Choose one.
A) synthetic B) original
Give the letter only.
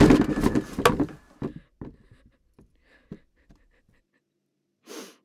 B